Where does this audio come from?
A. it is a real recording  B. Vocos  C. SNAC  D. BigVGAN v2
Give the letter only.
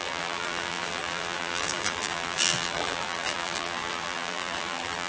D